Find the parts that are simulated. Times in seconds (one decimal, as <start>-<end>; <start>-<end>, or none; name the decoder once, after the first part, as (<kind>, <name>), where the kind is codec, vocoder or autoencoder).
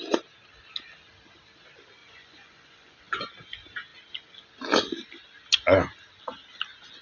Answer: 2.0-3.3 (vocoder, Vocos)